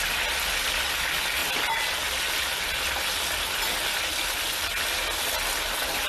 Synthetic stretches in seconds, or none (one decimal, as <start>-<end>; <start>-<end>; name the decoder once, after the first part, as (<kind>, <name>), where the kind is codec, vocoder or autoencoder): none

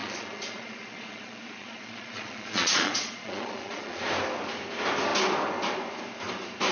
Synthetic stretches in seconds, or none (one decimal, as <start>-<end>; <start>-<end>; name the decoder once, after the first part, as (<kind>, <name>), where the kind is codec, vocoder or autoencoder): 0.0-4.0 (vocoder, Vocos)